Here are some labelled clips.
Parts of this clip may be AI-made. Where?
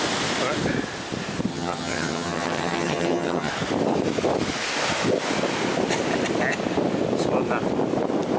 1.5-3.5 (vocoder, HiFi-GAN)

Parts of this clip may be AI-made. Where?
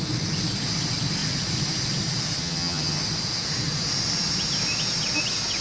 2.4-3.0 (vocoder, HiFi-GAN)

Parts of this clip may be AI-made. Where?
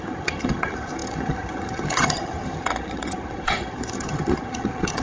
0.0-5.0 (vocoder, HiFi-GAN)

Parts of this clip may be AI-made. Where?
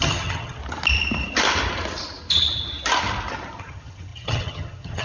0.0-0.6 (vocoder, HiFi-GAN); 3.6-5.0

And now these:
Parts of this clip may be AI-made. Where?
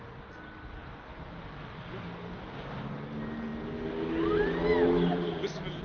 none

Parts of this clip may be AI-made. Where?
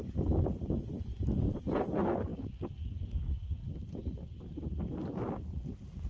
none